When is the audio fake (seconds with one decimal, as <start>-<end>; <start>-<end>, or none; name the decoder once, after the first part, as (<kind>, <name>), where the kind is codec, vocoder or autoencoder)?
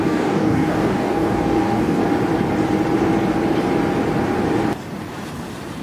0.0-2.0 (codec, DAC)